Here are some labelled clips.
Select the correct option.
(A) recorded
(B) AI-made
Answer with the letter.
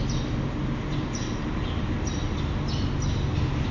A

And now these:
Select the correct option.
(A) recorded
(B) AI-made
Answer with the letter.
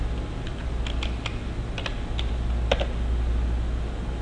A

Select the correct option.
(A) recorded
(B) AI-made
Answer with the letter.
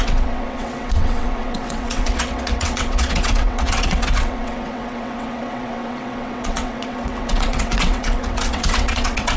B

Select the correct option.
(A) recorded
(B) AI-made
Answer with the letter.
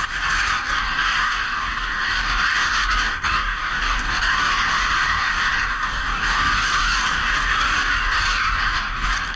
B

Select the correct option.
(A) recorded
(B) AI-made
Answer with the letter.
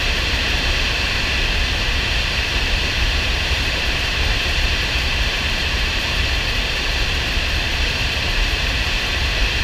B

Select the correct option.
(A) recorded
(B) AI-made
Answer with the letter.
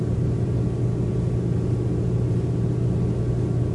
A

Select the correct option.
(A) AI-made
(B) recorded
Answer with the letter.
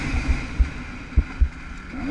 B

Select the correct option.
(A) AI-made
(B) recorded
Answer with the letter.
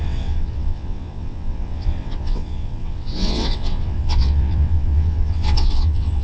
A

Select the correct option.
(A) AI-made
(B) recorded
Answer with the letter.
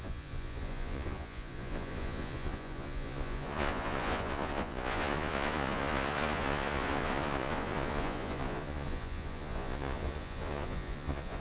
A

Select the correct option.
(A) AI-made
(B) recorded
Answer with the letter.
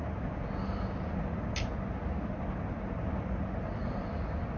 B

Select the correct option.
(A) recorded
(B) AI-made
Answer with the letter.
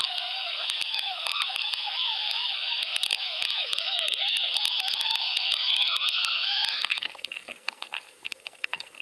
B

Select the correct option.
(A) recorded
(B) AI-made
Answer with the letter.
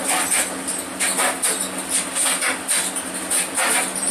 A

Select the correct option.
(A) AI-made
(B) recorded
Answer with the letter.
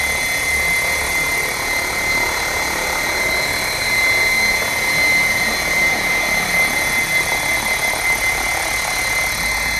B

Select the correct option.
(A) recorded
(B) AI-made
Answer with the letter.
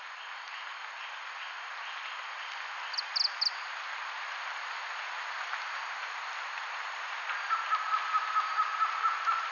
A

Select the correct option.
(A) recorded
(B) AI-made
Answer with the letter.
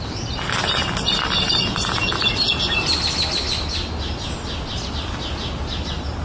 A